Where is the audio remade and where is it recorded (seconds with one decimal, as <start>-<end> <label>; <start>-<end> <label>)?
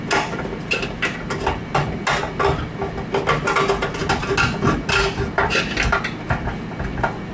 0.0-7.3 recorded